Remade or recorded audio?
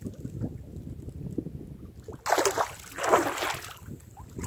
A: recorded